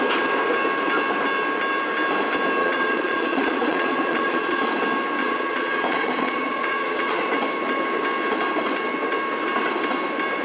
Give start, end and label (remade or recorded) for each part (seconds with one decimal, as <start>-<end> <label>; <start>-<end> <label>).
0.0-2.6 recorded; 2.6-4.7 remade; 4.7-5.2 recorded; 5.2-7.3 remade; 7.3-10.4 recorded